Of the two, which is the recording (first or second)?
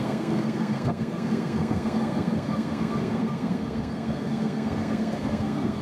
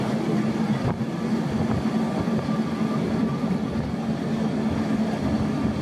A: second